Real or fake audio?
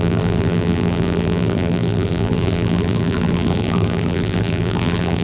fake